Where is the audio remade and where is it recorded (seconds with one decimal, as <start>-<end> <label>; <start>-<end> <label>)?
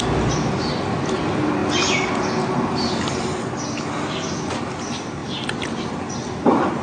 0.0-6.8 recorded